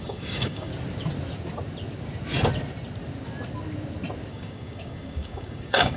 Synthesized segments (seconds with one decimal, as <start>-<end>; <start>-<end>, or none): 0.0-0.7; 4.3-6.0